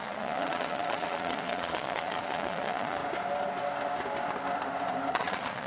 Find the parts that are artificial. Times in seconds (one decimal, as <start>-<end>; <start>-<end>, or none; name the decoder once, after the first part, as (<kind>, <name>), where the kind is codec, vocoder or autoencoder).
0.0-3.0 (vocoder, Vocos); 5.1-5.7

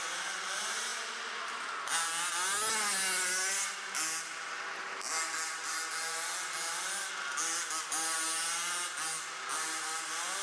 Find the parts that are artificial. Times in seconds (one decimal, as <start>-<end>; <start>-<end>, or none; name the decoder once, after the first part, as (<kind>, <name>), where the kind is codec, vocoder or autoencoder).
none

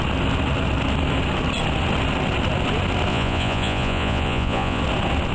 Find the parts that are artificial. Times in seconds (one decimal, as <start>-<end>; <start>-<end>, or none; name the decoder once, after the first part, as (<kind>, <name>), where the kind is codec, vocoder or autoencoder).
3.1-4.8 (vocoder, Vocos)

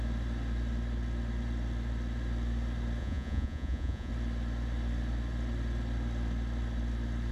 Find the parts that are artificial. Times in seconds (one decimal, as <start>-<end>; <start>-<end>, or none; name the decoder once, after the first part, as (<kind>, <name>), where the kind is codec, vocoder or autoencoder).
3.0-4.1 (vocoder, Vocos)